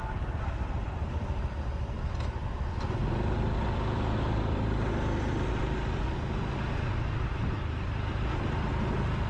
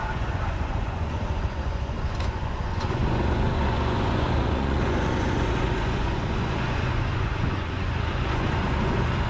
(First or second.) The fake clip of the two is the second